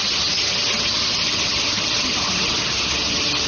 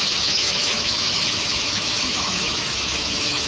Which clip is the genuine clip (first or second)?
first